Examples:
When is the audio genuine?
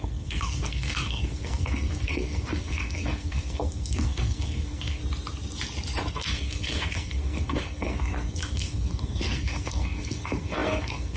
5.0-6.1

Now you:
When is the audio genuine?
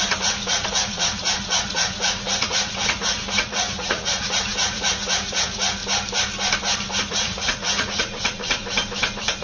5.8-7.0; 8.6-9.4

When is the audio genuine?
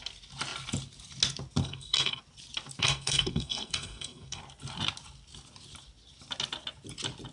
0.0-1.6; 2.2-2.8; 4.4-7.3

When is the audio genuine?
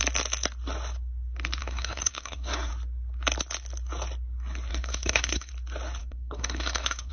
0.0-1.6; 2.7-4.7; 5.5-6.0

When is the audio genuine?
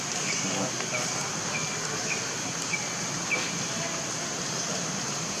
0.0-5.4